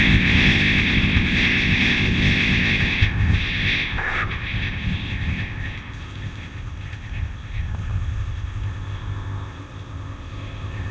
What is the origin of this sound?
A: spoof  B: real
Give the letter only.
A